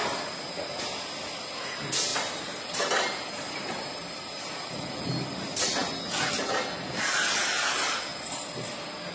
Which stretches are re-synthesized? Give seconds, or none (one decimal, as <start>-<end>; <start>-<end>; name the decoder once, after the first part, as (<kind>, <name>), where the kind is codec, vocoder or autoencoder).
2.1-4.9 (vocoder, BigVGAN v2); 8.1-8.7